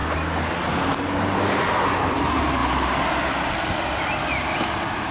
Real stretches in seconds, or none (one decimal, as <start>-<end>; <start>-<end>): 0.0-2.0; 2.6-3.3